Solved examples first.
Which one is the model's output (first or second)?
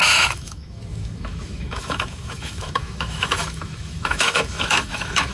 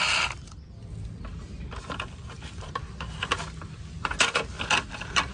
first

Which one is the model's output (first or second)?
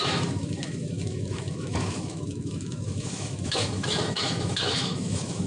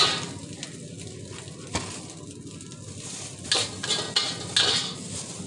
first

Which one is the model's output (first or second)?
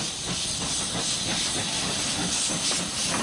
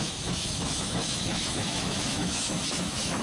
second